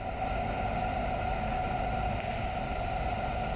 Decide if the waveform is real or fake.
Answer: real